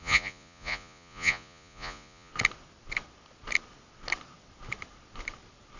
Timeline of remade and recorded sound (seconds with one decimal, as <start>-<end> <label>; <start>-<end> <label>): 0.0-2.3 remade; 2.3-5.8 recorded